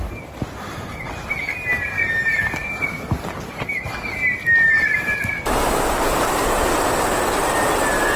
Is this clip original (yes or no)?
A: yes